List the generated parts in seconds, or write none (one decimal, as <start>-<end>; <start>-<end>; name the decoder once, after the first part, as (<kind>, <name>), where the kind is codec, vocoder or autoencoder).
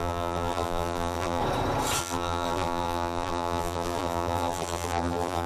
0.0-1.4 (vocoder, BigVGAN v2); 2.0-5.5